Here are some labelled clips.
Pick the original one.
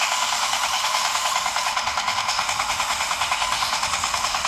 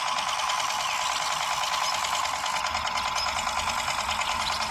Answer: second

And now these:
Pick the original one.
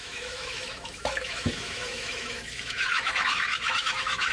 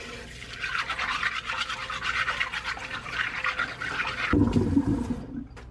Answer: second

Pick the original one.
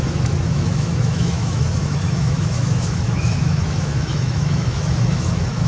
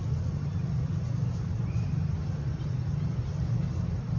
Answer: second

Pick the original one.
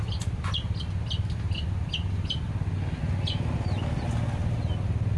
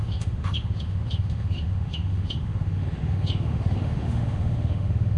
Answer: first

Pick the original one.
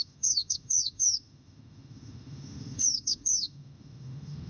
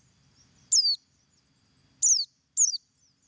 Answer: second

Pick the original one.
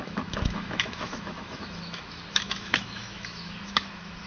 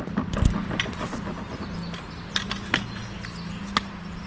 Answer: second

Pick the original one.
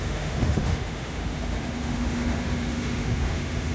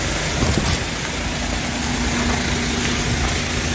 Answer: second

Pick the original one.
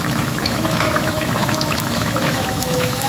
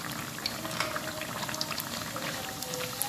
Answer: second